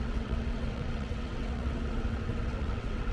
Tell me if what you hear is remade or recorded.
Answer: remade